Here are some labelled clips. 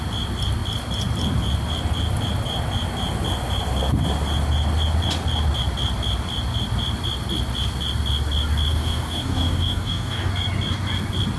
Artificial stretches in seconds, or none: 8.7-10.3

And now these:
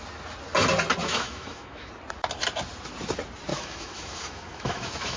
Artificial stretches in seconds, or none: 1.0-1.9; 3.5-5.2

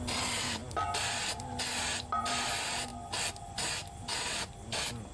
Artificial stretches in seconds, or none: none

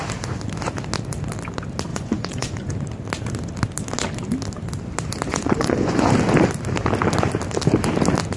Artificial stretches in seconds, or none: 1.9-2.7; 5.3-6.0

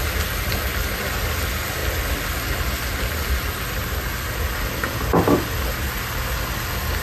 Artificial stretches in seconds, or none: none

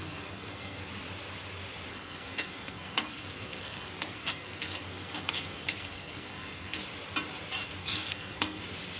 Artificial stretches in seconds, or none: 0.0-0.9; 1.9-6.8; 7.8-8.6